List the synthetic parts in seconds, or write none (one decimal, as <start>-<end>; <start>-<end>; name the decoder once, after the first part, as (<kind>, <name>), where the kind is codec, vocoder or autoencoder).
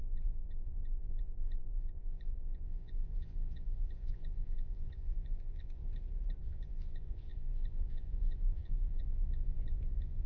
0.0-5.8 (vocoder, Vocos); 6.4-10.3